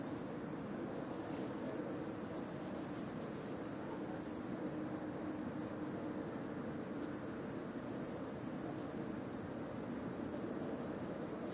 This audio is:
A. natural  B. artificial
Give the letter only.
A